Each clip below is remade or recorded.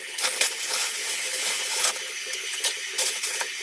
remade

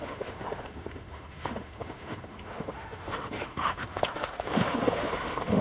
remade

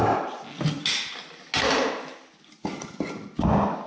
recorded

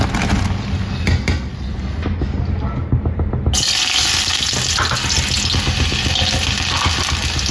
recorded